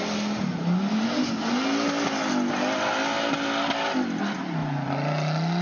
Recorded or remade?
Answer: recorded